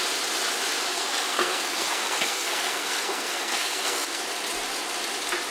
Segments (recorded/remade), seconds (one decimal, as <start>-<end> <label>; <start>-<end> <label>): 0.0-0.9 recorded; 0.9-4.2 remade; 4.2-5.5 recorded